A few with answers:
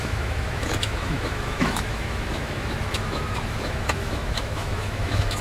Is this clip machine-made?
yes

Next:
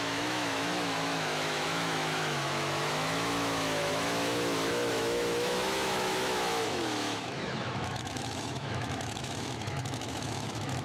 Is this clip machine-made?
yes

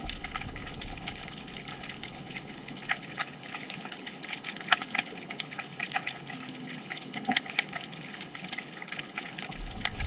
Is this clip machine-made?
yes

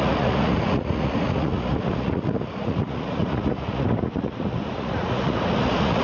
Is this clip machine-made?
yes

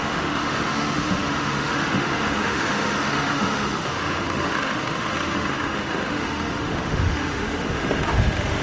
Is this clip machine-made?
yes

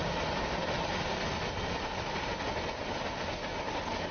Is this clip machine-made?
no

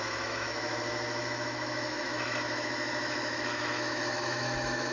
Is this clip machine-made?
yes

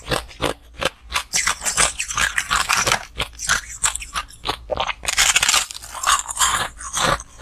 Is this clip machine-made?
no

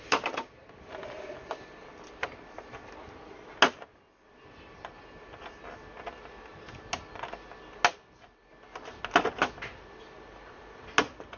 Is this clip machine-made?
no